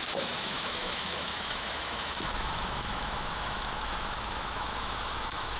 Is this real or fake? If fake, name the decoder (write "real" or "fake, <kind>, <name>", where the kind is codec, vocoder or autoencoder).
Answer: fake, autoencoder, DAC-VAE